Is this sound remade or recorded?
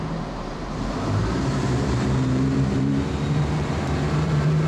remade